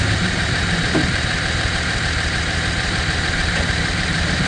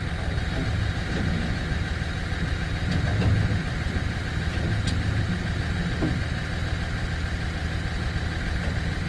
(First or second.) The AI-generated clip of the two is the first